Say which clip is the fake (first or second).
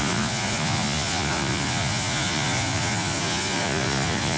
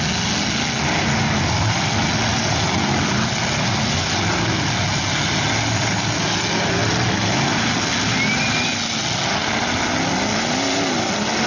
first